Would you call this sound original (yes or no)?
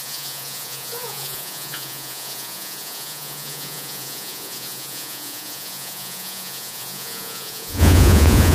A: no